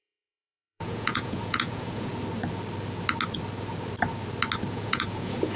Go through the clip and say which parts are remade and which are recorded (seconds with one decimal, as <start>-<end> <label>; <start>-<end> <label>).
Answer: 0.0-2.1 remade; 2.1-4.7 recorded; 4.7-5.6 remade